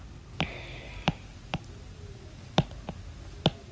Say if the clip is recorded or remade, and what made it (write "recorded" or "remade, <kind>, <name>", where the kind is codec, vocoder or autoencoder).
recorded